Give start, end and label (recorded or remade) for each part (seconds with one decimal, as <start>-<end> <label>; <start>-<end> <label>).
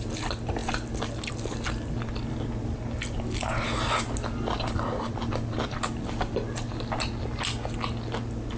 0.0-8.6 recorded